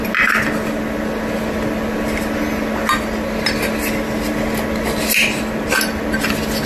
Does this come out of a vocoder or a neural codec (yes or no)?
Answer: no